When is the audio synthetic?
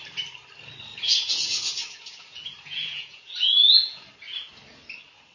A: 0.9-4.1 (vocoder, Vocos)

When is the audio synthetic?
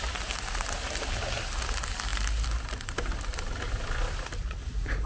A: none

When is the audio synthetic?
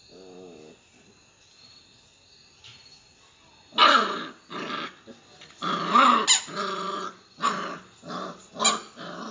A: none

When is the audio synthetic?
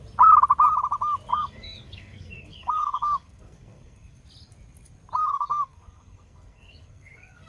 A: 1.3-4.2 (codec, SNAC); 5.2-7.5